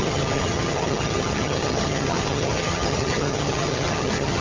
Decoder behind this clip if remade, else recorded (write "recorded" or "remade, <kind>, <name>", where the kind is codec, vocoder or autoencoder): remade, vocoder, HiFi-GAN